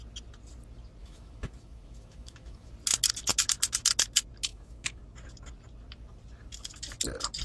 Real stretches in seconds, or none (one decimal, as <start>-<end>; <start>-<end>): 0.0-1.0; 2.7-4.5; 5.0-7.4